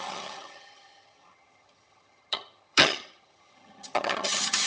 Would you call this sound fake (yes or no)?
yes